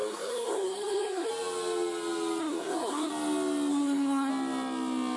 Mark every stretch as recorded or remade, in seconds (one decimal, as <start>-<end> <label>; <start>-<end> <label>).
0.0-1.3 remade; 1.3-2.4 recorded; 2.4-3.1 remade; 3.1-3.7 recorded; 3.7-4.3 remade; 4.3-5.2 recorded